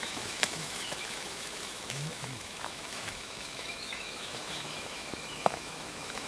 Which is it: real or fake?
fake